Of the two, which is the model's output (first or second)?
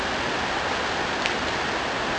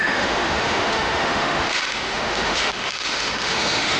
second